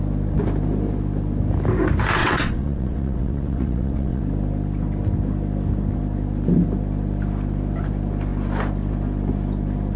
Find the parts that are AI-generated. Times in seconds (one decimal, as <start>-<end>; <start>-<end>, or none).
2.2-4.2